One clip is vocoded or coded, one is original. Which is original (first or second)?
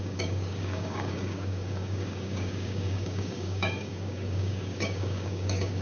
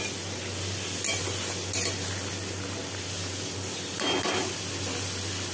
second